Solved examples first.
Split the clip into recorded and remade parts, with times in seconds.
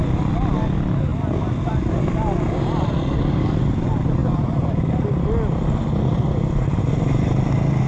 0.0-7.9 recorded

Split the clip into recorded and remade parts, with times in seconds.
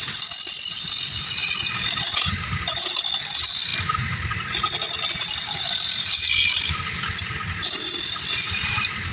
0.0-9.1 recorded